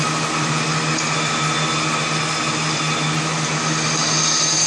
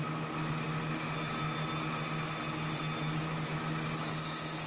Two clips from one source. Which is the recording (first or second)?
second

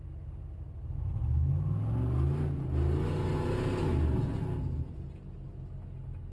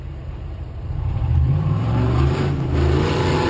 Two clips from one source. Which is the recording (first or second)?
first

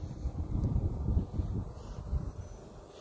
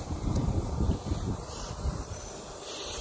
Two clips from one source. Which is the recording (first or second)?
first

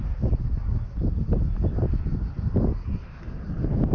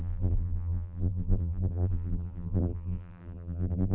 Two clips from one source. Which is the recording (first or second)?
first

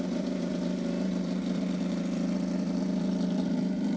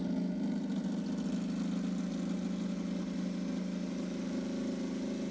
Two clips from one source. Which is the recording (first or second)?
second